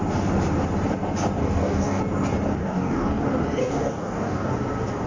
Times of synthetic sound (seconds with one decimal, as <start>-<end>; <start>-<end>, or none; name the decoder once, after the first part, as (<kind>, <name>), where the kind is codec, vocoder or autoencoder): 1.4-2.0 (codec, DAC); 2.6-3.2; 3.6-4.5